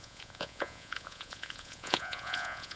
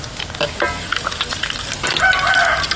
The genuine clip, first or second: second